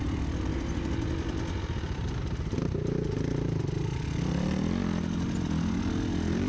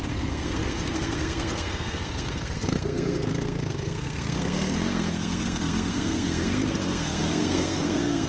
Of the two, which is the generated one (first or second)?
second